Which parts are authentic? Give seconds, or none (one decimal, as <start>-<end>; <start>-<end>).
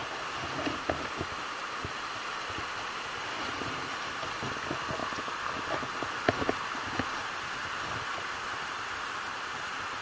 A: 0.0-10.0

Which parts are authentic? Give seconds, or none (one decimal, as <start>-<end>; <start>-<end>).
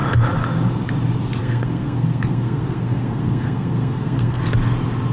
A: 0.0-1.4; 4.4-5.1